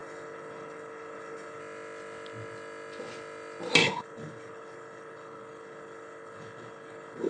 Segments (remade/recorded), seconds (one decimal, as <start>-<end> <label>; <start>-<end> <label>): 0.0-1.6 remade; 1.6-3.8 recorded; 3.8-7.3 remade